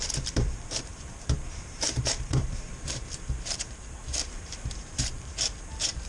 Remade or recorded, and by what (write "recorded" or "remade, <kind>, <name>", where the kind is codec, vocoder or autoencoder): remade, vocoder, BigVGAN v2